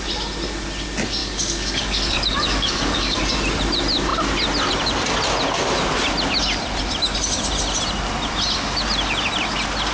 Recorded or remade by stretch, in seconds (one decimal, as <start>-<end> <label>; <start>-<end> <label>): 0.0-1.2 recorded; 1.2-3.2 remade; 3.2-9.9 recorded